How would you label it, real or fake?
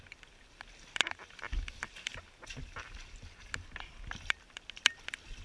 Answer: real